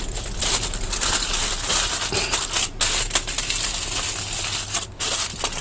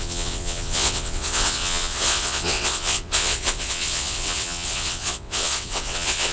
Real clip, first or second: first